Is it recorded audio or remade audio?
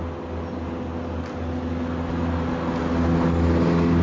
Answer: recorded